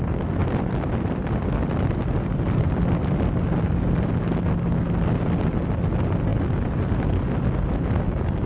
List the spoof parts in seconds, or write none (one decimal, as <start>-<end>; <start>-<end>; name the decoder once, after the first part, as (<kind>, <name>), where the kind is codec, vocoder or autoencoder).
0.4-4.1 (vocoder, BigVGAN v2)